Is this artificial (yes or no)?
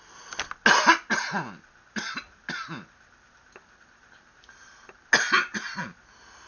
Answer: no